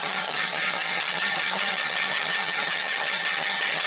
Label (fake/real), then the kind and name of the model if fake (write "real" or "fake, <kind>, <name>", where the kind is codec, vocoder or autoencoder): fake, vocoder, HiFi-GAN